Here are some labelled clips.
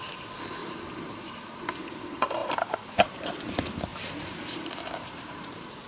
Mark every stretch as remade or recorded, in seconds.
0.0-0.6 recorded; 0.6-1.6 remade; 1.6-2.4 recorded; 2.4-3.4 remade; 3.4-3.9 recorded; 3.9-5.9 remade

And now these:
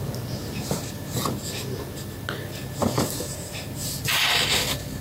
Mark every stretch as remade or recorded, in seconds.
0.0-0.4 recorded; 0.4-1.4 remade; 1.4-2.8 recorded; 2.8-4.6 remade; 4.6-5.0 recorded

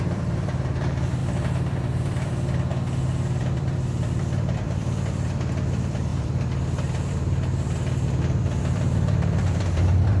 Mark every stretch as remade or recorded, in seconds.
0.0-1.2 remade; 1.2-1.7 recorded; 1.7-2.7 remade; 2.7-3.4 recorded; 3.4-10.2 remade

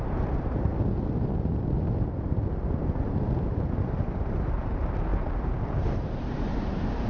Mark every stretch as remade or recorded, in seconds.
0.0-0.7 remade; 0.7-3.5 recorded; 3.5-7.1 remade

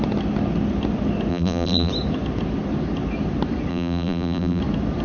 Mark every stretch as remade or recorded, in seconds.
0.0-1.3 recorded; 1.3-1.9 remade; 1.9-3.7 recorded; 3.7-4.6 remade; 4.6-5.0 recorded